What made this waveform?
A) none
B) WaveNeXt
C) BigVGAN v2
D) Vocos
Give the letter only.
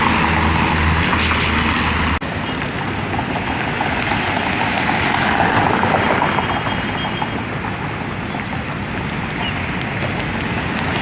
A